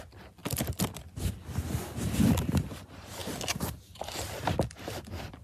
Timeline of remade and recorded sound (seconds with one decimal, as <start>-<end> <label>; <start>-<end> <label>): 0.0-5.4 recorded